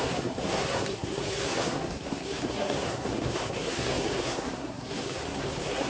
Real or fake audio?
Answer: fake